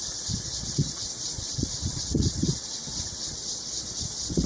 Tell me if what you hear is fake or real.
fake